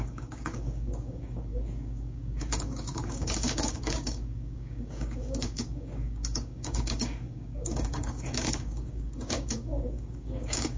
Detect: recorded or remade remade